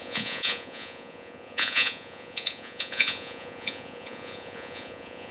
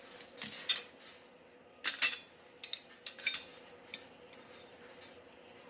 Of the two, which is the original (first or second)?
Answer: second